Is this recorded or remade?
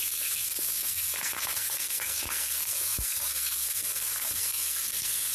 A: remade